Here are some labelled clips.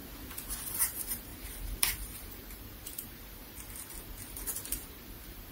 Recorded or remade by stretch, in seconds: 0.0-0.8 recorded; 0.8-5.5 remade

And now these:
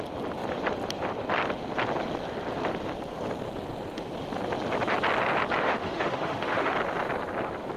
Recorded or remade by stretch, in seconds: 0.0-5.6 recorded; 5.6-6.7 remade; 6.7-7.8 recorded

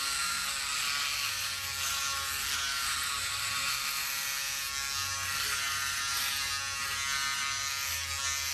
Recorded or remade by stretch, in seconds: 0.0-8.5 recorded